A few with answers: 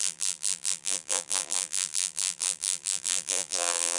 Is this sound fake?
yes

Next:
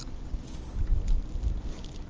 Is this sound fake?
no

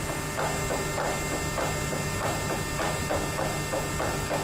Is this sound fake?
no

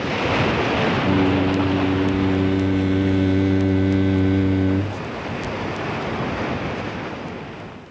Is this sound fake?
no